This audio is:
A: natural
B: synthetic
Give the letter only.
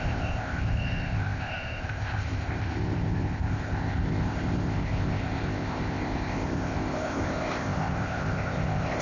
B